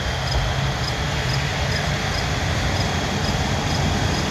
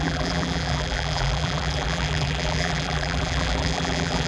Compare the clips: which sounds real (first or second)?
first